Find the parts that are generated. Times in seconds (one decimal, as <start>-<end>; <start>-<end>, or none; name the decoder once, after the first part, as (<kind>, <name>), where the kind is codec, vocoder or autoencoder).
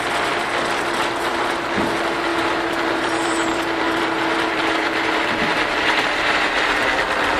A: 2.3-6.7 (vocoder, BigVGAN v2)